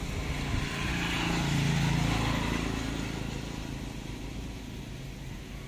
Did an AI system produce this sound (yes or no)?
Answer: no